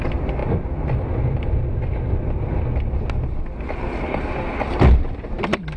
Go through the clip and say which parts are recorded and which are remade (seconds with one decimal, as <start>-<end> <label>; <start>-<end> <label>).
0.0-5.8 recorded